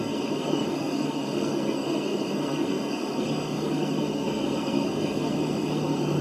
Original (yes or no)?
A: no